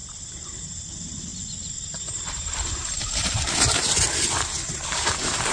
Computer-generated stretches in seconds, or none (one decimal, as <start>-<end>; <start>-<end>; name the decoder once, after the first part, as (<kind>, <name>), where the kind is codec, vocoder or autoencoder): 0.0-1.3 (vocoder, BigVGAN v2); 4.6-5.5